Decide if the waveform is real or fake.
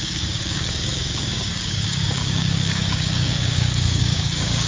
fake